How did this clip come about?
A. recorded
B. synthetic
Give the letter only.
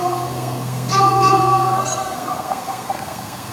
B